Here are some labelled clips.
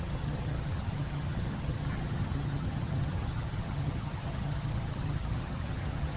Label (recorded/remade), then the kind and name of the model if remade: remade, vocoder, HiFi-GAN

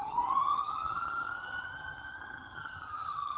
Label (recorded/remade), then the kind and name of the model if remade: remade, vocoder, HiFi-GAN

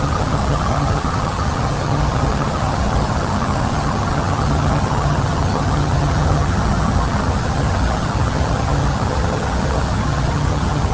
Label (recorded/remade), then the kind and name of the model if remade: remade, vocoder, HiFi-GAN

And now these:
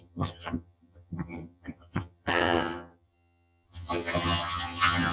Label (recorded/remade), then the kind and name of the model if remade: remade, vocoder, HiFi-GAN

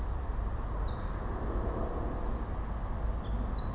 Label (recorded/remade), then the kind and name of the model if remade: recorded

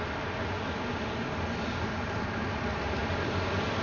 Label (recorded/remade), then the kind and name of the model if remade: recorded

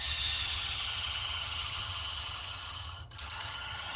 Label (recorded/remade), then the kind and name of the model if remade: remade, vocoder, HiFi-GAN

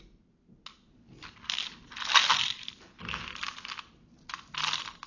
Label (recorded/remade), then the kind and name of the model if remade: recorded